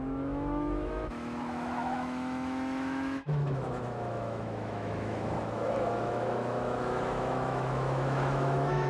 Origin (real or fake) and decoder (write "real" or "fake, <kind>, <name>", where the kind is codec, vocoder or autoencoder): fake, autoencoder, DAC-VAE